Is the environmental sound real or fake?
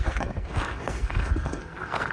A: fake